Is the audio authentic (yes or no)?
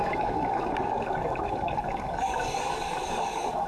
no